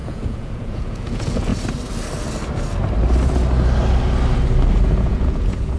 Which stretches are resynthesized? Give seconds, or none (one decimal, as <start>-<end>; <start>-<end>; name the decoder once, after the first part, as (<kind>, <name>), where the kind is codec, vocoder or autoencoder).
0.0-1.5 (vocoder, Vocos); 5.0-5.8